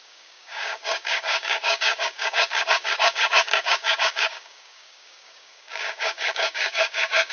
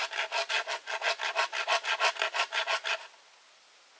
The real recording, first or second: second